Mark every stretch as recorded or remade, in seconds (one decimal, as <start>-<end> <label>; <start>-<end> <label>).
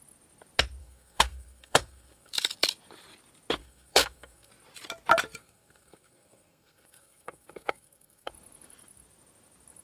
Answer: 0.0-0.8 recorded; 0.8-2.3 remade; 2.3-3.6 recorded; 3.6-4.5 remade; 4.5-5.4 recorded; 5.4-8.3 remade; 8.3-9.8 recorded